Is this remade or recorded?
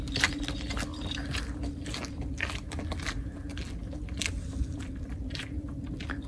recorded